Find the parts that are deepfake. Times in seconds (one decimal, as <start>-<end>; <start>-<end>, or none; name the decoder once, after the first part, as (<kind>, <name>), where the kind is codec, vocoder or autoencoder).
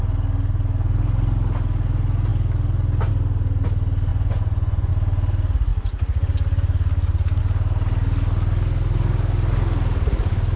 4.1-4.9 (vocoder, Vocos)